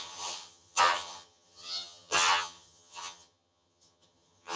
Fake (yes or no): yes